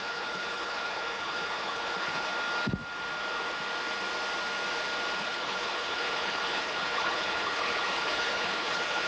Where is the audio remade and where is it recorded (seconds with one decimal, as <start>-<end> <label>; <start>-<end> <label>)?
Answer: 0.0-2.3 remade; 2.3-5.2 recorded; 5.2-9.1 remade